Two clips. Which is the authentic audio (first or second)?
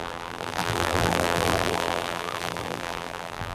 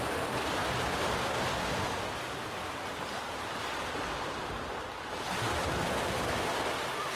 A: second